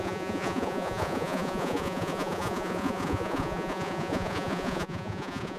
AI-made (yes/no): yes